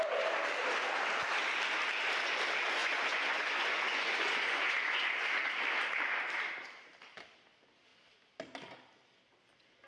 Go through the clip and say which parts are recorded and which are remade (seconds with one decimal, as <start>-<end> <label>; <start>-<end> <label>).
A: 0.0-2.8 recorded; 2.8-5.5 remade; 5.5-9.9 recorded